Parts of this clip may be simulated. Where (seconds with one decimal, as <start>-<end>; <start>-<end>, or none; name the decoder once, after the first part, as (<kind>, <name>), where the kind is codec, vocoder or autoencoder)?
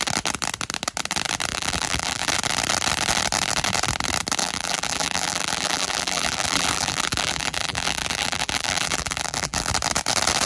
1.5-2.3 (vocoder, BigVGAN v2); 4.4-9.7